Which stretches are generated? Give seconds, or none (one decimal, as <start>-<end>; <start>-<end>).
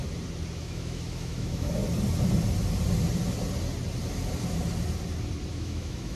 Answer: 0.6-1.8; 5.5-6.2